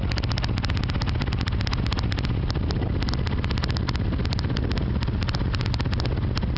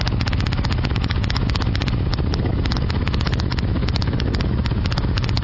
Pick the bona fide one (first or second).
first